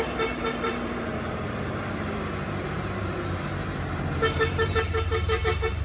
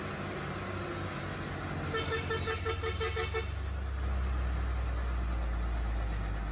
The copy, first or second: first